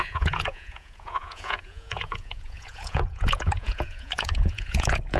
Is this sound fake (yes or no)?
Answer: yes